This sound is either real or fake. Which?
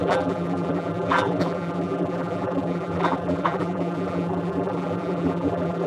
fake